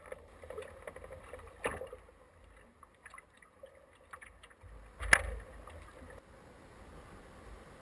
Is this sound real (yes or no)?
yes